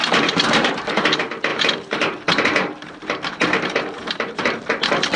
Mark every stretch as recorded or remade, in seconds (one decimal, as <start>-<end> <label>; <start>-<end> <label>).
0.0-1.0 remade; 1.0-1.5 recorded; 1.5-4.6 remade; 4.6-5.2 recorded